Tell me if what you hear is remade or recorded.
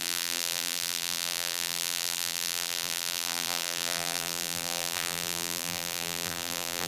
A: remade